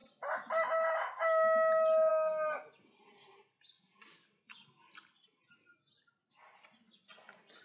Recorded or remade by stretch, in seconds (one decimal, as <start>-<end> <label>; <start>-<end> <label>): 0.0-7.6 recorded